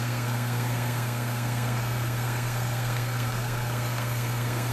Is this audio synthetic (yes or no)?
yes